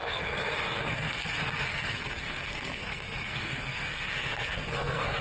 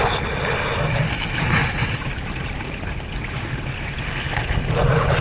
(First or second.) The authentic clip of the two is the second